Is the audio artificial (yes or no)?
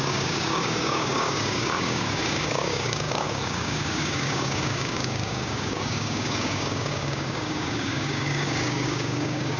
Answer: yes